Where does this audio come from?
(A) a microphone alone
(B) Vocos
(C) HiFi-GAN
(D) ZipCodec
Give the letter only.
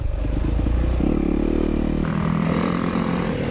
A